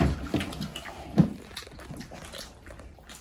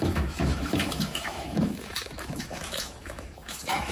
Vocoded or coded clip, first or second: second